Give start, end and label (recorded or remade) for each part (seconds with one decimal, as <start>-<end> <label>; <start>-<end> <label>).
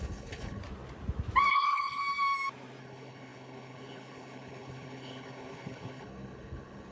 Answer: 0.0-0.6 remade; 0.6-1.5 recorded; 1.5-2.0 remade; 2.0-2.8 recorded; 2.8-6.9 remade